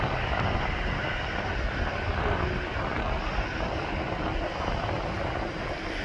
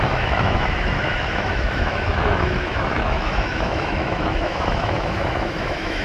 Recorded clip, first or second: first